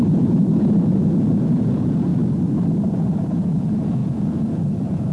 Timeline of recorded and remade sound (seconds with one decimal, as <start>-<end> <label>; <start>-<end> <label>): 0.0-2.1 remade; 2.1-2.9 recorded; 2.9-5.1 remade